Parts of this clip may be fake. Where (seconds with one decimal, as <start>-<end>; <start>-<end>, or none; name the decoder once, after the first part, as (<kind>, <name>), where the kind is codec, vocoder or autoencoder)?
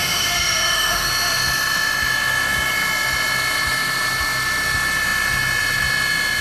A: 0.0-1.1 (autoencoder, DAC-VAE)